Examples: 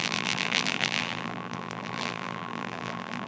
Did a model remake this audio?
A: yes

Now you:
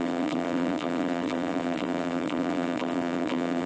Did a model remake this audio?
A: yes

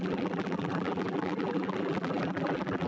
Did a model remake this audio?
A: yes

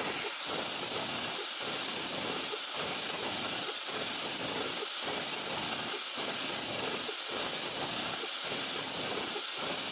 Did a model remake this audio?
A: no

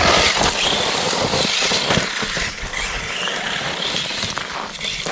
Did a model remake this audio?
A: no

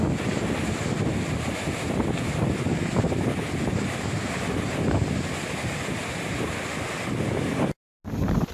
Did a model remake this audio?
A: no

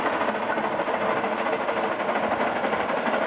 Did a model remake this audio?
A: yes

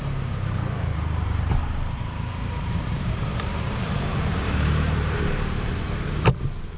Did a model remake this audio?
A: yes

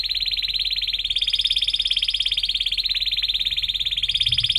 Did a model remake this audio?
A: no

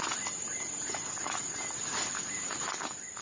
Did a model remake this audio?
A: yes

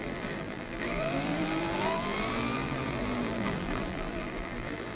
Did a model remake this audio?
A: yes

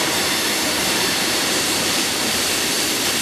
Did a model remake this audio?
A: yes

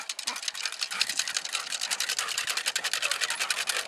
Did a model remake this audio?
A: no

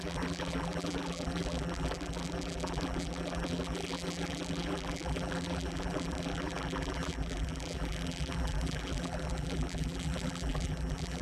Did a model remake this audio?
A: yes